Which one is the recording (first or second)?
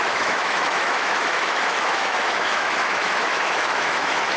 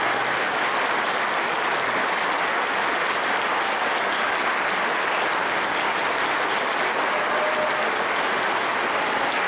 second